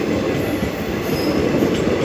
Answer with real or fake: real